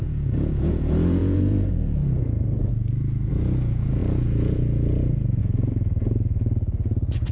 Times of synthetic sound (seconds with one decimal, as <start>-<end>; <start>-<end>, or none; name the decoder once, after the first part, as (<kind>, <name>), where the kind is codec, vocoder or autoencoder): 0.0-7.3 (vocoder, Vocos)